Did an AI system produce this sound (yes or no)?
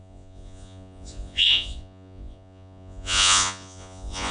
yes